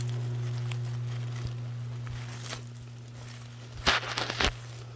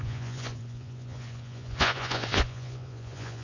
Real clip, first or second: first